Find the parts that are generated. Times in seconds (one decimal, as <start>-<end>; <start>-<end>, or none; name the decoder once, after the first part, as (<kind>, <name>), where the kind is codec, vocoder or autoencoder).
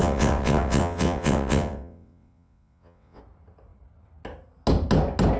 0.0-3.2 (vocoder, WaveNeXt)